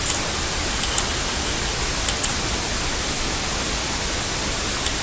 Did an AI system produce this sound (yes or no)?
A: no